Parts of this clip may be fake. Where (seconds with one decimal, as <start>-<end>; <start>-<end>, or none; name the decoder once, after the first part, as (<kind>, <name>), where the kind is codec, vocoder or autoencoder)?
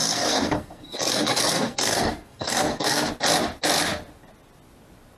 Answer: 0.0-3.1 (codec, SNAC)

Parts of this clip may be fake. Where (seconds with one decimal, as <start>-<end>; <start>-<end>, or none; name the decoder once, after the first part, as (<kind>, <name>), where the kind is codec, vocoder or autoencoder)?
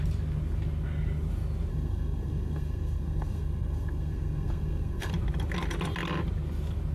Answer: 1.7-5.1 (codec, SNAC)